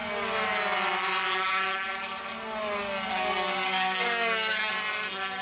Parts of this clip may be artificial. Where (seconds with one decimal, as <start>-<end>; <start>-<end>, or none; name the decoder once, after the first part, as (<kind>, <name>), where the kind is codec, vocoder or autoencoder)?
3.1-4.7 (codec, SNAC)